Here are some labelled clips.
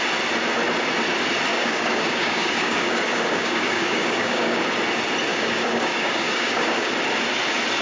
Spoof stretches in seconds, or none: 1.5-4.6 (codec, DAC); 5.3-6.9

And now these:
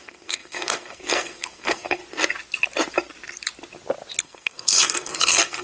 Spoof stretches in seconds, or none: 0.0-2.0 (codec, SNAC); 4.2-5.6

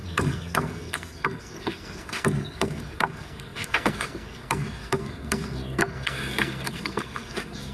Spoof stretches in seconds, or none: 0.0-7.7 (codec, SNAC)

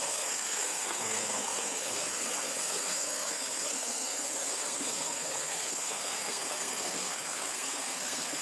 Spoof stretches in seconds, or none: 0.0-8.4 (codec, SNAC)

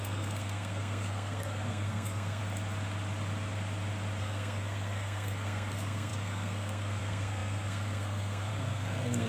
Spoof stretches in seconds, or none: 0.0-2.4 (codec, SNAC); 4.2-9.3